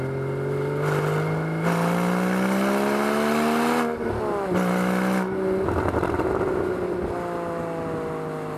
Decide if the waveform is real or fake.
real